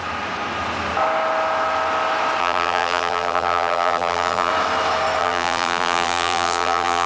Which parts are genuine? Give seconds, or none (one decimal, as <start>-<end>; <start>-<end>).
0.0-2.4; 4.5-5.2